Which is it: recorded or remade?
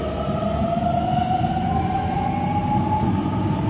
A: recorded